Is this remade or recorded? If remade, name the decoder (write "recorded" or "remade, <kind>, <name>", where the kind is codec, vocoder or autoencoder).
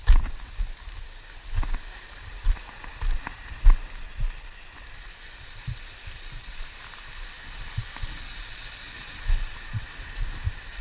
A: recorded